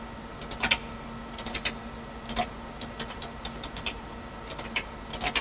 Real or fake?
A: real